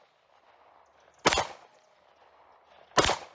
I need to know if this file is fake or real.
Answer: real